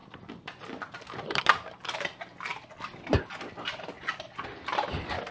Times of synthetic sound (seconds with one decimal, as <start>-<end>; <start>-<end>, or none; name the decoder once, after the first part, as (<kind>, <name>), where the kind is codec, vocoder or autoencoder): 0.0-1.4 (vocoder, BigVGAN v2)